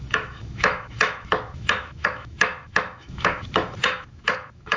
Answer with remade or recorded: remade